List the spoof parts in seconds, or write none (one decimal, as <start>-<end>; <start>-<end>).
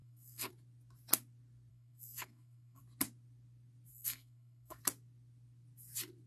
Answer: 0.0-0.5; 1.7-2.8; 3.9-4.8